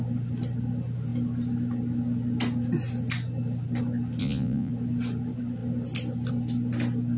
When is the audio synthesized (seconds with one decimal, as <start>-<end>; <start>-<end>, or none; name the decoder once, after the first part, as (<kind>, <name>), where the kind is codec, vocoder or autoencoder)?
4.2-4.7 (vocoder, Vocos)

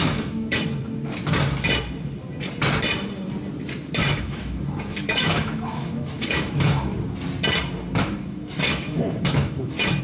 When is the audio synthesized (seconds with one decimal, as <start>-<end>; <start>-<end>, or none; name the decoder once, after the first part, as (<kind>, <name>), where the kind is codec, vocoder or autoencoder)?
0.0-0.8 (autoencoder, DAC-VAE); 4.2-6.9; 8.0-10.0